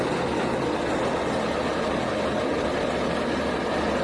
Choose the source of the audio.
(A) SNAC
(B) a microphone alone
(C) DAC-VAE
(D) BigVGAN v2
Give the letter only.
B